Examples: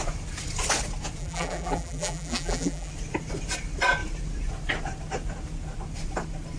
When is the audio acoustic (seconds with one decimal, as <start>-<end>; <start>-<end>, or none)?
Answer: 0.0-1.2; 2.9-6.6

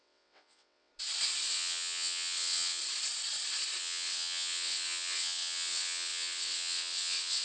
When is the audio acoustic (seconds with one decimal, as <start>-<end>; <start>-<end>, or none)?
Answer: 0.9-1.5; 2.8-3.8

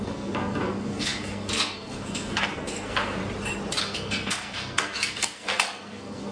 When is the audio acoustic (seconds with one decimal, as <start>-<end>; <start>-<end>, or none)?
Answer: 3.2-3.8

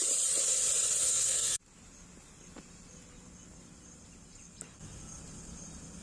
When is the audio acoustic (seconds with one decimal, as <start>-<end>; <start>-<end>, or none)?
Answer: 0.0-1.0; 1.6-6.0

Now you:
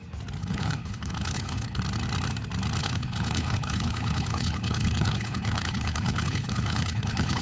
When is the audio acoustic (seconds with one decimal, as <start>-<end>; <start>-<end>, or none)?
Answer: 0.0-0.4; 1.8-2.8

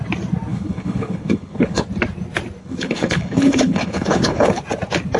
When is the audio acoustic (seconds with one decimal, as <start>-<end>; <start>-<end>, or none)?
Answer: 0.0-0.5; 1.8-2.6; 4.6-5.2